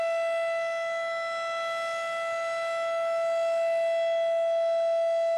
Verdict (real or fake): real